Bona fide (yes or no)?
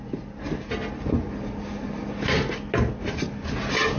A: yes